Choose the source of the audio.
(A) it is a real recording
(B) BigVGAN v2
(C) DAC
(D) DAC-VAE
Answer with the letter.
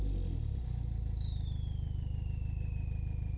A